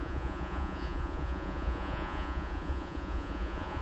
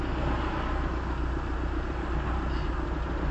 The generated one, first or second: first